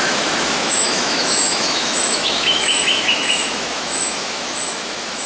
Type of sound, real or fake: fake